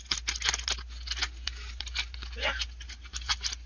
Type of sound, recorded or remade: recorded